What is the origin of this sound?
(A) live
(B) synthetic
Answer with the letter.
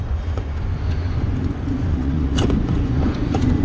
B